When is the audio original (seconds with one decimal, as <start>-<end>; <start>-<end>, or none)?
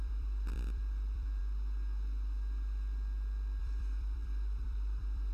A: 1.4-3.6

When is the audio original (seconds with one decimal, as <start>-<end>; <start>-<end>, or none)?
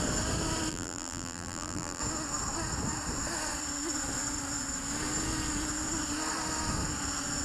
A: 0.0-0.7; 2.0-7.4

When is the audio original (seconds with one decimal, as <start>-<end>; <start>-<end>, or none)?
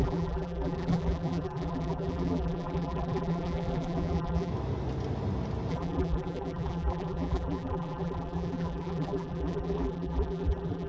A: 4.5-5.7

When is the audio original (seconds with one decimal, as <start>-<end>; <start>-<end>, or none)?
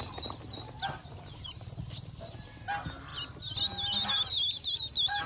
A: 0.0-5.3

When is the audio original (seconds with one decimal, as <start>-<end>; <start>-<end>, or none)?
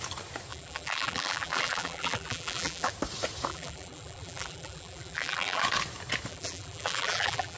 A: 0.0-0.5; 2.9-3.5; 5.6-6.3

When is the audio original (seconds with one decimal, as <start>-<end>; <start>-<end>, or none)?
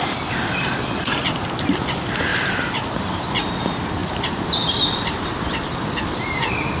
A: 0.0-2.3; 3.3-4.0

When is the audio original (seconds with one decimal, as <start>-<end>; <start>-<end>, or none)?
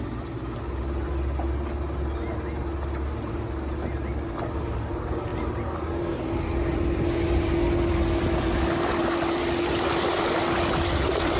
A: 0.0-11.4